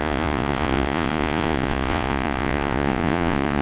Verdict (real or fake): fake